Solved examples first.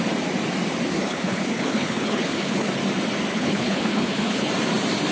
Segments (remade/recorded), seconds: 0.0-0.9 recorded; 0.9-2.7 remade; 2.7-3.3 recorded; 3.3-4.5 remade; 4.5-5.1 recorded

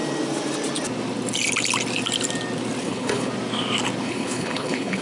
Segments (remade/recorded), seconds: 0.0-2.8 recorded; 2.8-3.3 remade; 3.3-4.0 recorded; 4.0-5.0 remade

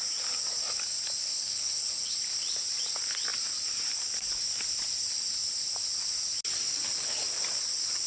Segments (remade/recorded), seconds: 0.0-1.2 recorded; 1.2-2.1 remade; 2.1-8.1 recorded